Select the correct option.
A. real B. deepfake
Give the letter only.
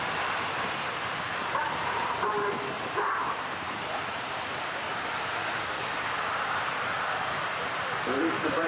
B